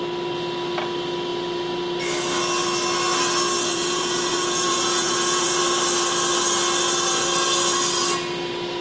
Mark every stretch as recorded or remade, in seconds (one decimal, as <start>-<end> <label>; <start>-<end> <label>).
0.0-3.7 recorded; 3.7-5.6 remade; 5.6-8.8 recorded